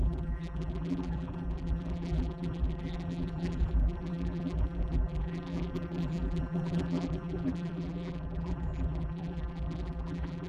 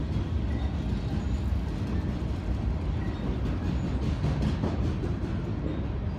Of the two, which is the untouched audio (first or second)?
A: second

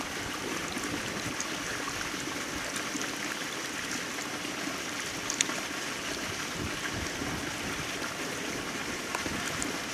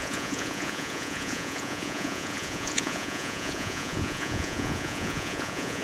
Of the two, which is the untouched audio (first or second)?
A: first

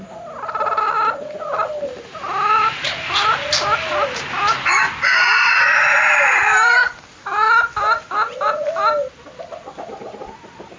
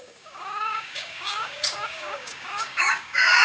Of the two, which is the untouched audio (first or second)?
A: first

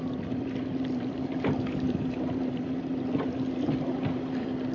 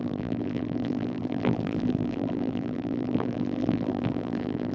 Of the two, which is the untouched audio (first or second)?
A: first